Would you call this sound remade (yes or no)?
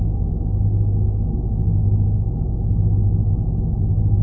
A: no